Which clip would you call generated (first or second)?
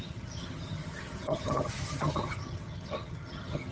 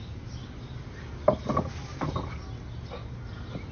first